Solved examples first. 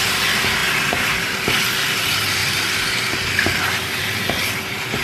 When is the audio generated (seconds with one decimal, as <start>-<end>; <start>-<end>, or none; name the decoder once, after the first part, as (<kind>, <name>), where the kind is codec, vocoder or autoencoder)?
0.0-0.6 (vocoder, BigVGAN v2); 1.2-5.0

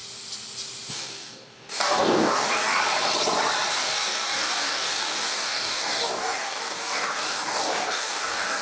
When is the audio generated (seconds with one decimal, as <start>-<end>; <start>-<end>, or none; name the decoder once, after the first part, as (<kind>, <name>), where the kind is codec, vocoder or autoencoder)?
0.9-2.8 (codec, DAC); 3.7-8.6

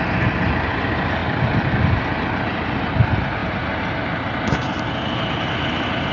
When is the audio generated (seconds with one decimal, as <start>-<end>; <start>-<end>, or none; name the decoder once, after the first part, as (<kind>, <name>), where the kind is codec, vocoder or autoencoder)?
1.2-2.0 (vocoder, BigVGAN v2)

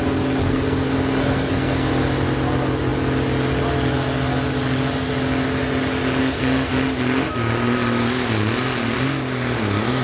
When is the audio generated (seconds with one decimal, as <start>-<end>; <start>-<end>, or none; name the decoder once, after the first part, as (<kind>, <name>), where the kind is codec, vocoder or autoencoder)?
0.4-1.9 (codec, SNAC); 6.2-6.7